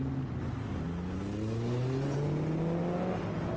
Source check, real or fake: real